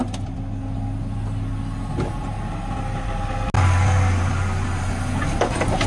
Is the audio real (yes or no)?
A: yes